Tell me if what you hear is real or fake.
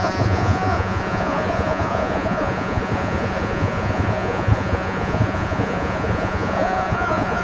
fake